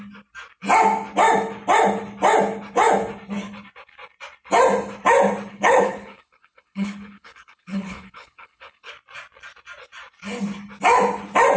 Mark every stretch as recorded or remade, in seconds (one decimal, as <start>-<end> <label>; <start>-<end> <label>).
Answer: 0.0-5.5 recorded; 5.5-8.9 remade; 8.9-11.6 recorded